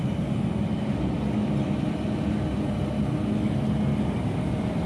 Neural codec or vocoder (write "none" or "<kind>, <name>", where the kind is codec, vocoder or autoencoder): none